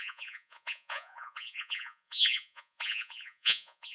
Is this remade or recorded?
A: remade